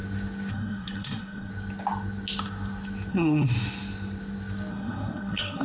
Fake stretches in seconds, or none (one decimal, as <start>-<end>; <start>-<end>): 0.5-1.5; 3.1-3.5; 4.7-5.6